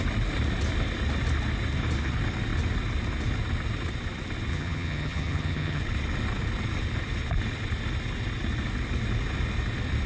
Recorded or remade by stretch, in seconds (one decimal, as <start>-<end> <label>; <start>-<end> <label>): 0.0-4.5 recorded; 4.5-5.8 remade; 5.8-10.1 recorded